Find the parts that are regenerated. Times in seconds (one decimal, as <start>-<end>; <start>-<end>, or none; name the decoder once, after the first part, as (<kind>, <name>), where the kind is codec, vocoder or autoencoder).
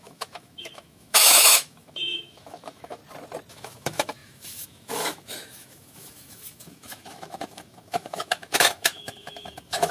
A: 0.0-3.0 (autoencoder, DAC-VAE); 3.5-9.9